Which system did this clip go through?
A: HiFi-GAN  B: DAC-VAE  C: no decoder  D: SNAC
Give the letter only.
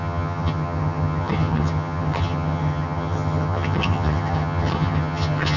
A